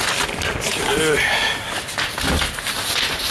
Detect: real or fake real